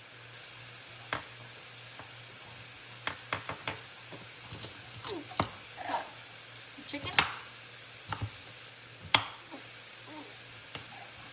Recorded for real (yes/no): yes